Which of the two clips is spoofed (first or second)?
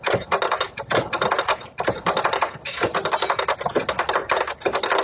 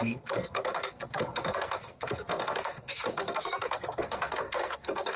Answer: second